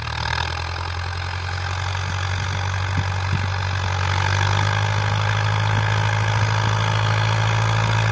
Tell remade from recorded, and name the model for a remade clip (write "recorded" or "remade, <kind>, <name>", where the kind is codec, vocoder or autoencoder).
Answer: recorded